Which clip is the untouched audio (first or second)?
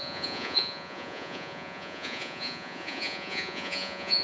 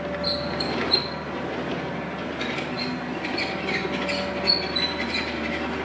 second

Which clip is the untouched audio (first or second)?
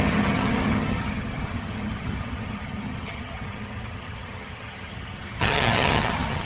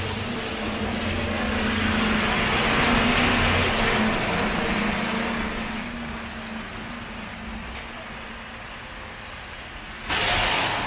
second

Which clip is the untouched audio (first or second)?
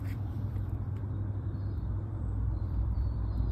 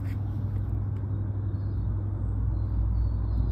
second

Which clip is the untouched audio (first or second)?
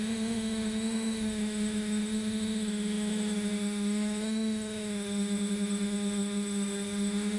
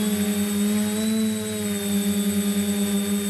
second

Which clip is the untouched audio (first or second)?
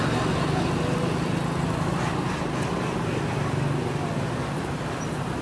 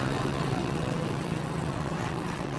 first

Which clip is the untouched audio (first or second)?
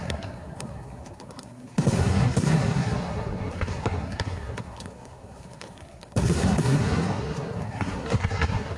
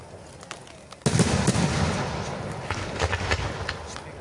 second